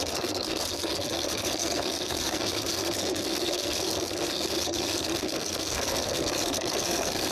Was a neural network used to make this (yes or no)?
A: yes